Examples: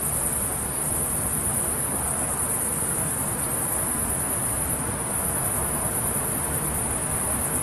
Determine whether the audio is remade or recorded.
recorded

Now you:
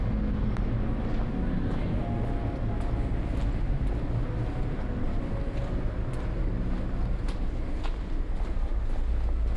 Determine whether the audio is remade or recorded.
recorded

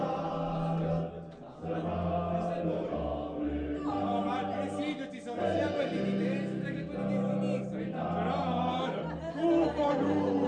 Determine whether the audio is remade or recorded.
recorded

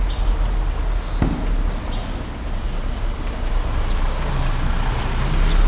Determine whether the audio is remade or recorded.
recorded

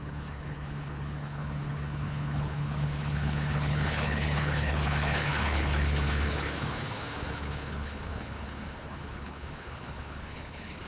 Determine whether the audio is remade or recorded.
remade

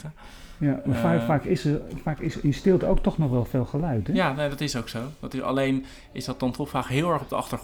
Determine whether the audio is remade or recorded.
recorded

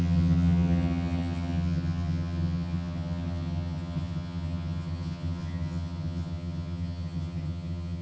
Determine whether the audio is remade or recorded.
remade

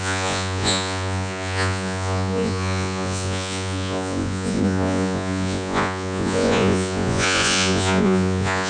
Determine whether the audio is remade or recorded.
remade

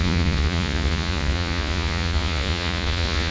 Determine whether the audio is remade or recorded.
remade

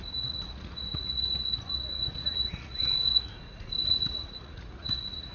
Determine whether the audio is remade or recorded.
remade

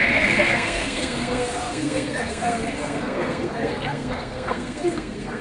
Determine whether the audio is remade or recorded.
remade